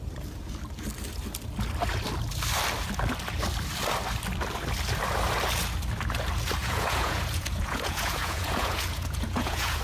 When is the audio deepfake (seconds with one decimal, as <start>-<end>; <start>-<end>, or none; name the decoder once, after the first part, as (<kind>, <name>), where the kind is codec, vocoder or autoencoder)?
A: 6.6-9.8 (vocoder, Vocos)